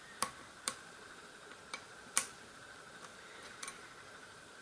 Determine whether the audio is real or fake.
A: fake